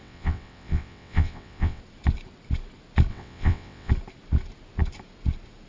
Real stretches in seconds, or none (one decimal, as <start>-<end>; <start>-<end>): 1.8-3.1; 3.9-5.7

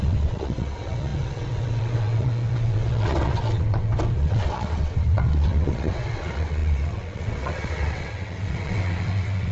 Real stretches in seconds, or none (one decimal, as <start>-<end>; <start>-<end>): none

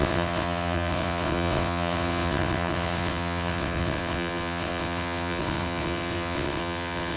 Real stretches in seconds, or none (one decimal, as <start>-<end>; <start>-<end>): none

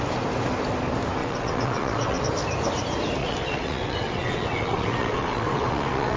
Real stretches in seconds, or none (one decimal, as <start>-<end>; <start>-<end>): 0.0-1.2; 2.2-3.2

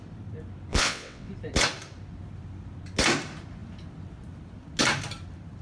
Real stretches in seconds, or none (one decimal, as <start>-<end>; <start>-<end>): 0.0-0.7; 1.3-5.6

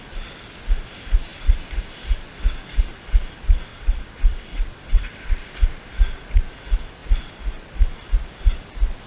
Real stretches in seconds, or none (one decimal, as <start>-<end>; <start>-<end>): 0.0-3.7; 5.4-9.1

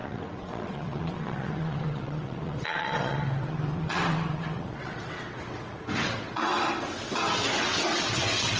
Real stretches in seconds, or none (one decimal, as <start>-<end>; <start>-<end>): 6.5-7.6